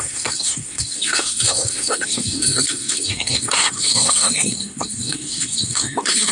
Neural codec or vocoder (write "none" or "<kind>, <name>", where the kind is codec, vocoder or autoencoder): codec, SNAC